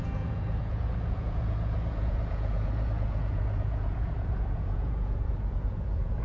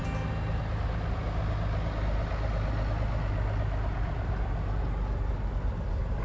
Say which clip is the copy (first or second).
first